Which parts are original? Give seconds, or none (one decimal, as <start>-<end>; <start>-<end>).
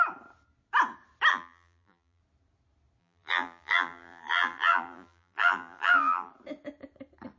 0.0-1.3; 2.2-3.0; 6.3-7.4